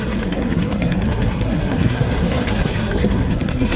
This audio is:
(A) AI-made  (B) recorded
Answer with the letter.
A